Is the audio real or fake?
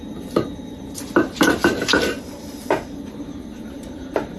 fake